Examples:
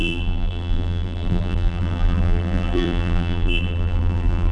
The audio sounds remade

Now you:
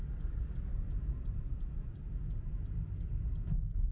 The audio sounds recorded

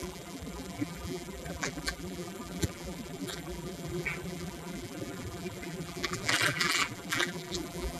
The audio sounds remade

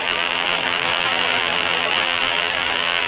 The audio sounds remade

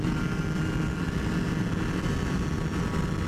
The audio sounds recorded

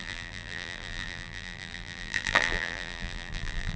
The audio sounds remade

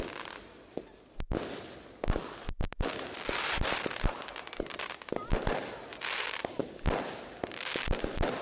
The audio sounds recorded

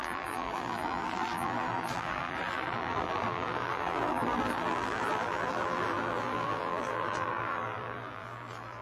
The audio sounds remade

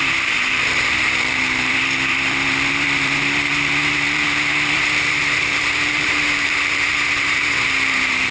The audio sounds remade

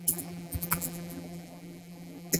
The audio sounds remade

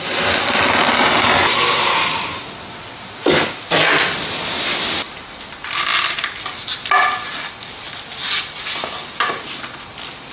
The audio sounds recorded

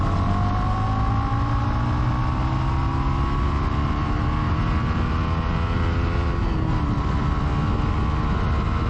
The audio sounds recorded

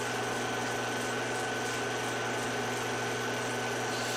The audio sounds recorded